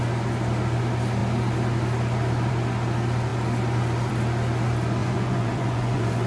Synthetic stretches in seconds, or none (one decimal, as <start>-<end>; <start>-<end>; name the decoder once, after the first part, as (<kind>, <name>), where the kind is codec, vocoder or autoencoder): 5.0-6.3 (vocoder, Vocos)